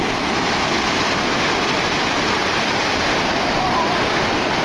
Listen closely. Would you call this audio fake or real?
real